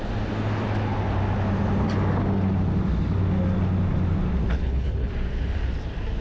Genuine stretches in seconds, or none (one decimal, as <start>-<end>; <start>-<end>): 0.0-4.5; 5.1-6.2